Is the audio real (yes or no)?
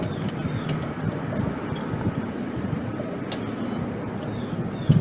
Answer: yes